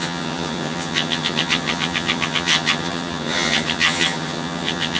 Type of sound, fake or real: fake